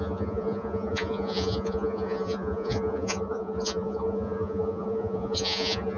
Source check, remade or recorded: remade